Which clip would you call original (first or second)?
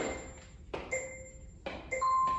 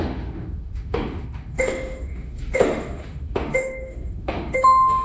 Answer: first